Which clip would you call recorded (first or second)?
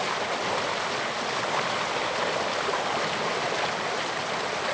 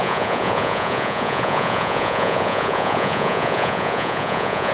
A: first